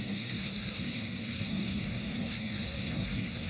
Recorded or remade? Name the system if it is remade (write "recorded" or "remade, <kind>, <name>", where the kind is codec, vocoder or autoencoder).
remade, codec, SNAC